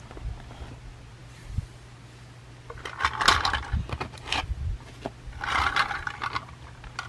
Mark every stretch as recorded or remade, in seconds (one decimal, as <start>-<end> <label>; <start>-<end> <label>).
0.0-7.1 recorded